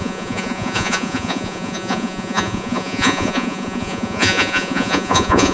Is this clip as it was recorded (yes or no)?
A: no